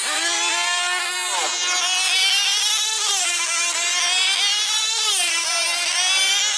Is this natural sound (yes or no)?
yes